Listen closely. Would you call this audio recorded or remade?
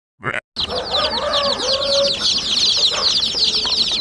recorded